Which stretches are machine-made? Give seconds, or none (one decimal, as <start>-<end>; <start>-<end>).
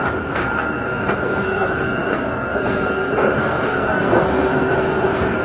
0.0-5.4